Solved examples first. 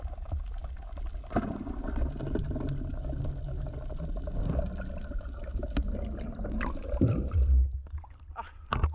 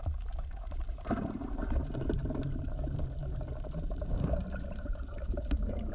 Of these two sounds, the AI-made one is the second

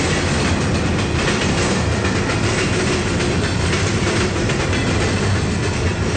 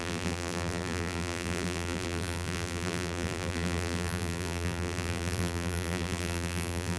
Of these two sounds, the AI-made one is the second